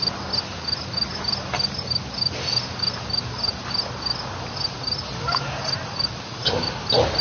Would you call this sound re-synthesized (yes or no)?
no